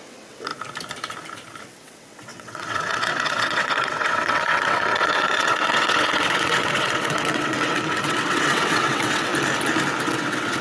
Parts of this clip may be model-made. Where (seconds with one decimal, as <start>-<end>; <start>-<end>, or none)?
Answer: 0.0-0.5; 1.6-9.3; 10.0-10.6